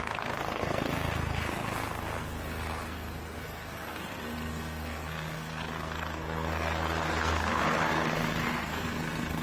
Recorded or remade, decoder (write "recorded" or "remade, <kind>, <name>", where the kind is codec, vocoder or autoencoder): remade, codec, SNAC